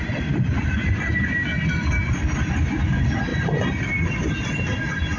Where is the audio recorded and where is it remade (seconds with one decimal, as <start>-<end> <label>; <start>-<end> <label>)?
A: 0.0-5.2 recorded

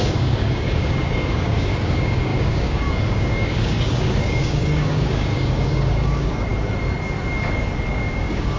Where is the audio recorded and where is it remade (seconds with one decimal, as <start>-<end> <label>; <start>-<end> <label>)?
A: 0.0-6.5 remade; 6.5-7.9 recorded; 7.9-8.6 remade

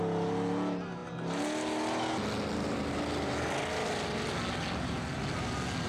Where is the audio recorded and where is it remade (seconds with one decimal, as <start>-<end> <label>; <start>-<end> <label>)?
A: 0.0-5.9 recorded

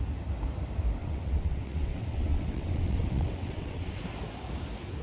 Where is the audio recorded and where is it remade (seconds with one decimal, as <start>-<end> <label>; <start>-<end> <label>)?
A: 0.0-1.0 recorded; 1.0-4.0 remade; 4.0-5.0 recorded

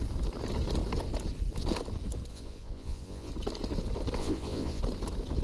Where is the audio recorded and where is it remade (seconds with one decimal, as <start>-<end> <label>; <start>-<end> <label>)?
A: 0.0-2.3 recorded; 2.3-3.3 remade; 3.3-4.2 recorded; 4.2-4.8 remade; 4.8-5.4 recorded

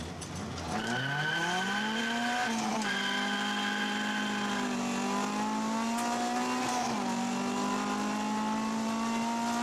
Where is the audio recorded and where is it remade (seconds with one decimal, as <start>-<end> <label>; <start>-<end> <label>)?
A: 0.0-9.6 recorded

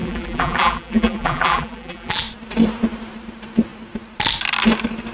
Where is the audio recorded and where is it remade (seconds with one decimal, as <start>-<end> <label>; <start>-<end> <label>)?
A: 0.0-2.2 remade; 2.2-5.1 recorded

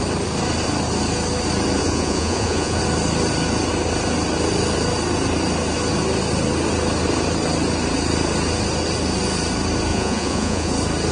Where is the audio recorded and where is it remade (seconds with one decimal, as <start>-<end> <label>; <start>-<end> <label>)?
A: 0.0-1.8 recorded; 1.8-2.8 remade; 2.8-9.9 recorded; 9.9-10.7 remade; 10.7-11.1 recorded